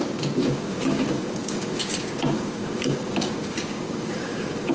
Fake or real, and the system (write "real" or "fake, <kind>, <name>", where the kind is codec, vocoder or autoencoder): fake, codec, DAC